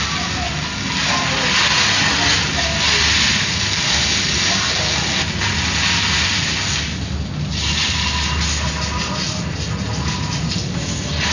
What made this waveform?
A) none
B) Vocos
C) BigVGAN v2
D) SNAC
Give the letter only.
A